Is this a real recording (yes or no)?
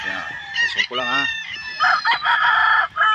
no